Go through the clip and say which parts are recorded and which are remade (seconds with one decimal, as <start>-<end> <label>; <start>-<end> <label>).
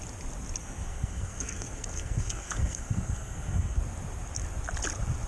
0.0-0.6 recorded; 0.6-3.8 remade; 3.8-5.3 recorded